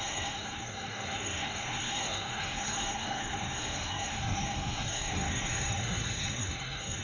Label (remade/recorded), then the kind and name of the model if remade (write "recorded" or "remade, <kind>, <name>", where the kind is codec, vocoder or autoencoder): remade, codec, SNAC